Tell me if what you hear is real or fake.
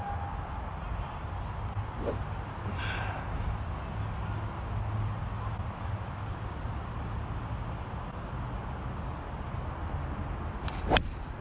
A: real